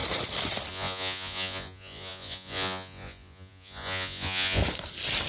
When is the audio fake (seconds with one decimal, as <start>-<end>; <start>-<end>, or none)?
0.7-4.6